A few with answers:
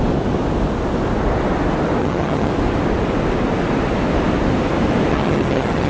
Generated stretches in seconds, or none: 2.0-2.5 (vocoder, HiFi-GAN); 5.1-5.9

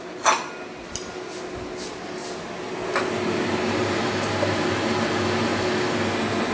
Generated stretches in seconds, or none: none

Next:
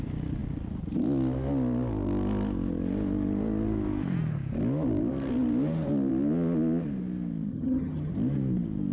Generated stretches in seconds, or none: 7.5-8.1 (vocoder, HiFi-GAN)

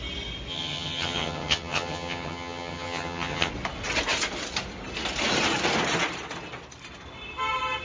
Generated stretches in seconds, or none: 0.5-3.5 (vocoder, HiFi-GAN)

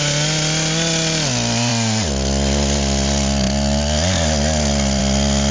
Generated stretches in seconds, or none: none